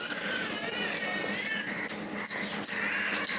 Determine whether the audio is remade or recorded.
recorded